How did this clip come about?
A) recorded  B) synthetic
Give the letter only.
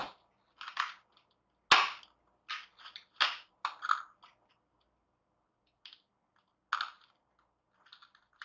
A